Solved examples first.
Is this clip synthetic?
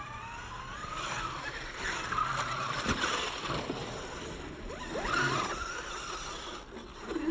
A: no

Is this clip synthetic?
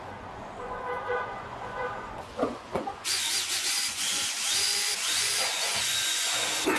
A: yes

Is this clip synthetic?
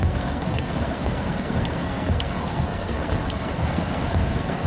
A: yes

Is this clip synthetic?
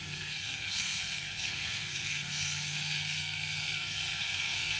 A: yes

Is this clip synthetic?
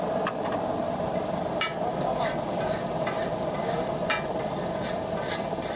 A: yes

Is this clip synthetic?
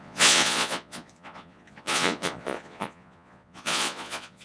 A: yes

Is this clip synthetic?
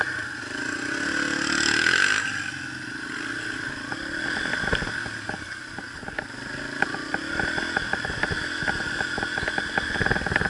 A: no